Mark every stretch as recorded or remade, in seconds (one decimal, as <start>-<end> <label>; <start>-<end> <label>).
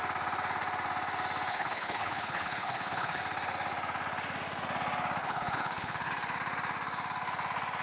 0.0-1.5 recorded; 1.5-3.2 remade; 3.2-5.2 recorded; 5.2-6.1 remade; 6.1-7.8 recorded